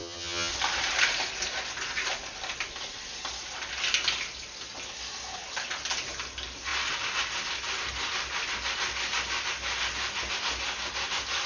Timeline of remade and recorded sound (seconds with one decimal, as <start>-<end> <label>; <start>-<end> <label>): 0.0-0.5 remade; 0.5-11.5 recorded